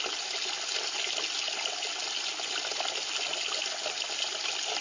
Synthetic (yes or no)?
no